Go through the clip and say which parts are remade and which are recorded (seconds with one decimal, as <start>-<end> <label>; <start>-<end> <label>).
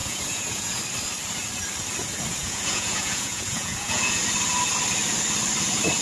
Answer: 0.0-0.8 remade; 0.8-2.4 recorded; 2.4-4.2 remade; 4.2-6.0 recorded